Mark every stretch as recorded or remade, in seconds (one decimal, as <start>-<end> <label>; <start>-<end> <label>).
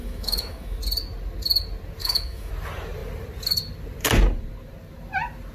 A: 0.0-0.8 remade; 0.8-2.0 recorded; 2.0-2.5 remade; 2.5-5.5 recorded